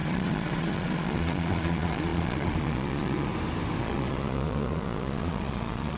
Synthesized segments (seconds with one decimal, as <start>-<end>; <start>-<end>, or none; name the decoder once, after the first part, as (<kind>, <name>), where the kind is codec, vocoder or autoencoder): 0.0-3.3 (vocoder, Vocos); 3.8-6.0